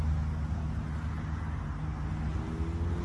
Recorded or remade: recorded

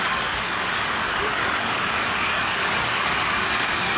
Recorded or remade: remade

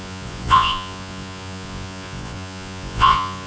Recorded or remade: remade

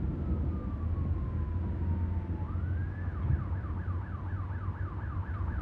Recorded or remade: recorded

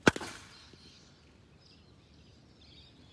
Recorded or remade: recorded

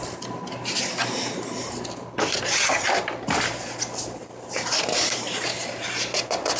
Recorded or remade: recorded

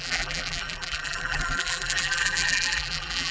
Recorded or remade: remade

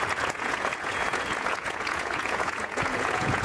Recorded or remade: remade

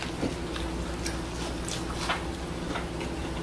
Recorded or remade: recorded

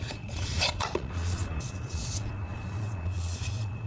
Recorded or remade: remade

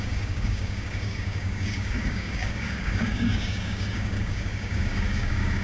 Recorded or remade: remade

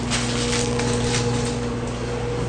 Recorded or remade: recorded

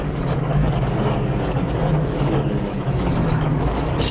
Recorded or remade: remade